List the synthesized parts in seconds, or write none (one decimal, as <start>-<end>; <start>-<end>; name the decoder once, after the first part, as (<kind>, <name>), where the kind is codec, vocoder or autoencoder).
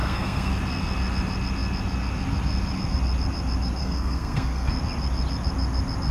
0.0-0.5 (codec, SNAC); 3.8-4.7